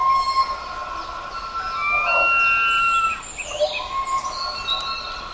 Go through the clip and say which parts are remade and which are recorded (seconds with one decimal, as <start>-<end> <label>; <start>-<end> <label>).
0.0-5.3 recorded